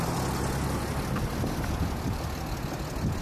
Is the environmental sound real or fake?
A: real